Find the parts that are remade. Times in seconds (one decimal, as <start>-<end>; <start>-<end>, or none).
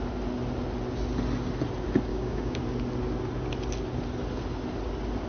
2.1-2.6